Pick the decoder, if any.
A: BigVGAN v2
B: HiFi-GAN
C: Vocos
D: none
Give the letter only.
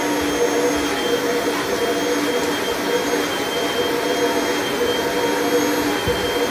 D